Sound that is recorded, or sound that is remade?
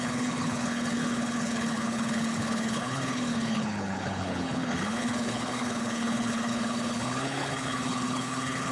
remade